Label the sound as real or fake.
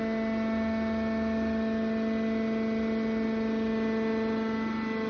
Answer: real